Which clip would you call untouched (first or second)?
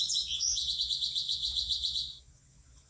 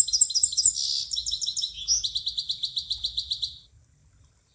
second